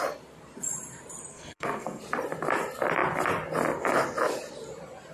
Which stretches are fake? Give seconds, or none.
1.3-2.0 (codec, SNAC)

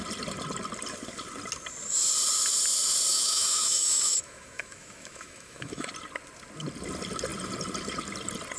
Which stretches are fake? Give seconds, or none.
3.1-5.9 (autoencoder, DAC-VAE)

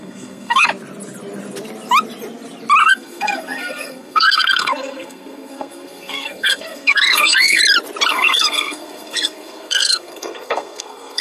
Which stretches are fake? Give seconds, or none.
0.0-0.7 (codec, SNAC); 2.8-7.6; 8.1-11.2

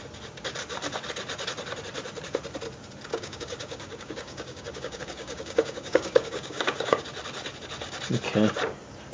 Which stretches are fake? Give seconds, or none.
3.1-7.0 (codec, DAC)

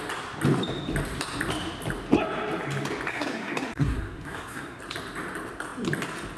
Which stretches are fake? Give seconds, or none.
3.1-4.8 (codec, SNAC)

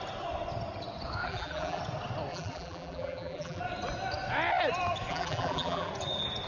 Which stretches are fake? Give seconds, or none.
1.2-1.8 (vocoder, BigVGAN v2); 2.3-3.6; 5.1-5.9

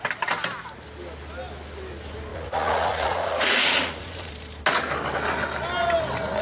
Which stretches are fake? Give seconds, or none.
2.3-4.3 (vocoder, Vocos)